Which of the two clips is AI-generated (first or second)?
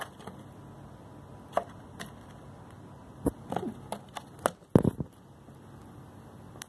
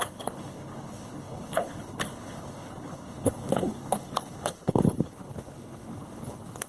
second